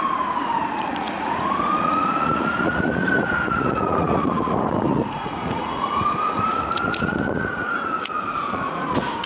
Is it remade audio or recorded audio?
remade